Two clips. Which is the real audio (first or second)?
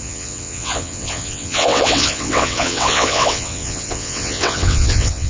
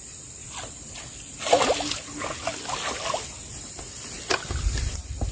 second